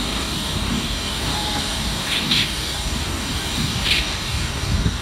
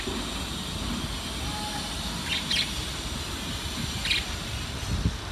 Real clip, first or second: second